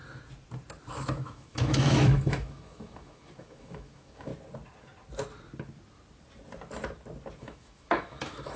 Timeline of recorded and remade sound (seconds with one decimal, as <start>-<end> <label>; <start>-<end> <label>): 0.0-0.9 recorded; 0.9-4.3 remade; 4.3-7.4 recorded; 7.4-8.6 remade